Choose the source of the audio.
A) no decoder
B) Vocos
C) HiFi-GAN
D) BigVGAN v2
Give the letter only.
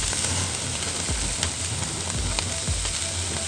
A